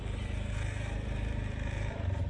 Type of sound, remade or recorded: remade